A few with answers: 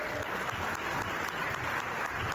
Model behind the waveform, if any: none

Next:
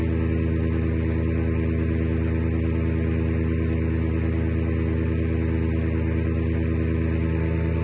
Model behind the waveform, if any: none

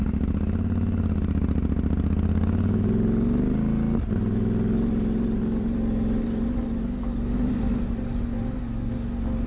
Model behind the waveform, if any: none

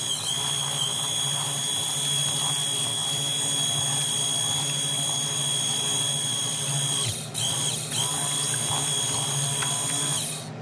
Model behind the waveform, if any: none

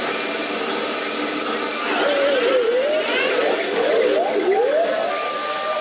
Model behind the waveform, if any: none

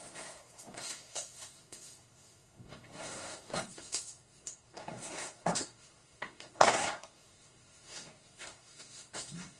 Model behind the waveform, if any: codec, SNAC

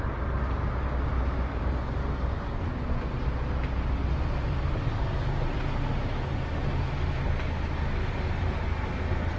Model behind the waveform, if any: none